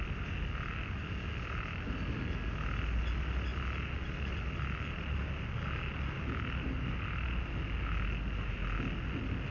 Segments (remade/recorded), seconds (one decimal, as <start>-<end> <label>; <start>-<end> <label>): 0.0-9.5 recorded